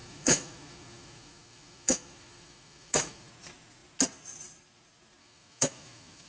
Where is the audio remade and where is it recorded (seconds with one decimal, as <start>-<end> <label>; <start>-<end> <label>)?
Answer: 0.0-3.3 remade; 3.3-5.2 recorded; 5.2-6.3 remade